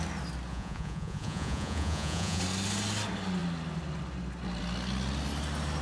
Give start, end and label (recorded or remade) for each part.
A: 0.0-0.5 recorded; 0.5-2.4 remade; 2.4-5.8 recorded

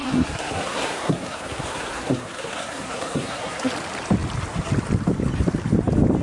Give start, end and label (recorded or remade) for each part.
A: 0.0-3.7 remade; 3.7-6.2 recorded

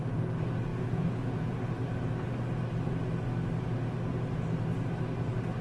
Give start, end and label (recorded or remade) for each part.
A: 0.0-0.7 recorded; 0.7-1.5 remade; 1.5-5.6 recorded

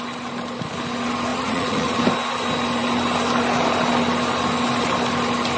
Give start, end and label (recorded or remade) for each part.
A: 0.0-1.3 recorded; 1.3-2.0 remade; 2.0-5.6 recorded

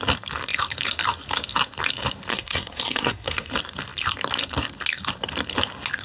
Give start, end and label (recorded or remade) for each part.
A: 0.0-2.3 recorded; 2.3-3.5 remade; 3.5-6.0 recorded